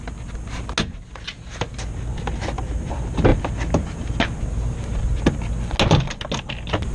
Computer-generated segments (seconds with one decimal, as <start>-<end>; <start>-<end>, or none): none

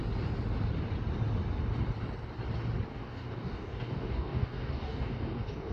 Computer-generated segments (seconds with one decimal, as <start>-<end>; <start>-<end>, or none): 2.9-5.7